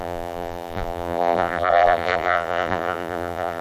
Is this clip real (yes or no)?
no